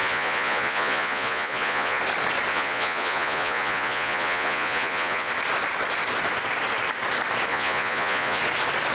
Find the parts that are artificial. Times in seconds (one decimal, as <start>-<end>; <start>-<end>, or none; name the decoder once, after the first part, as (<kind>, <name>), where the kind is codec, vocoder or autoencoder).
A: 0.0-2.0 (vocoder, Vocos); 2.5-5.3; 7.5-8.4